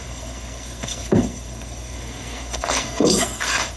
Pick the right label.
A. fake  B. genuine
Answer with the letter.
A